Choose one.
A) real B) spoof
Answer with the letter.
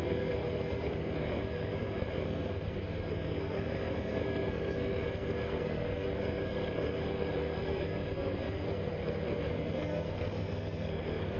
B